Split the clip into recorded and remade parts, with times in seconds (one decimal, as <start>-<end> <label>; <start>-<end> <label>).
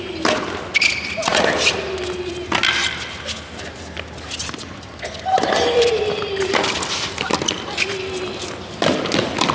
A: 0.0-4.4 recorded; 4.4-7.4 remade; 7.4-9.5 recorded